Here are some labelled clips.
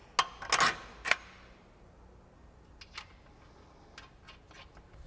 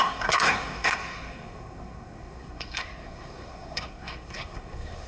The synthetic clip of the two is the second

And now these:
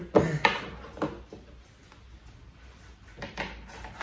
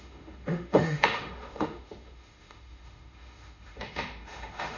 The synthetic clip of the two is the second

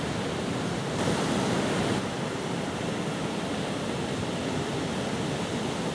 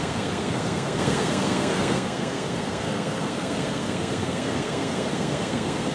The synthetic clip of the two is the second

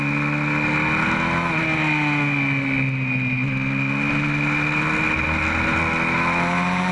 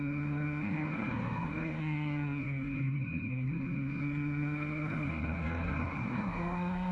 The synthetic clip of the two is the second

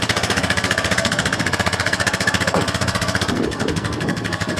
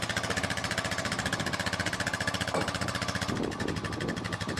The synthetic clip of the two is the first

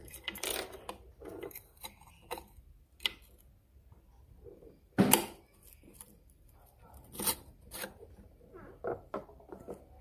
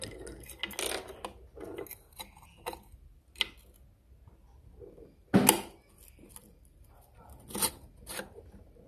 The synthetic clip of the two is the first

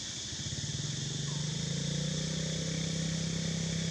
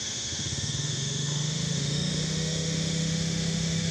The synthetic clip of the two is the second